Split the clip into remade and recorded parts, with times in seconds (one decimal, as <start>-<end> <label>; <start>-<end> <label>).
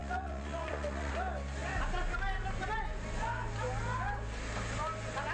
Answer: 0.0-1.1 remade; 1.1-5.3 recorded